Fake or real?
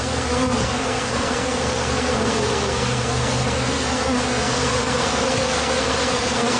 fake